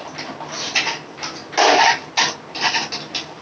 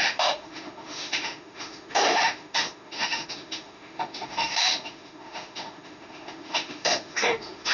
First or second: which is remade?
second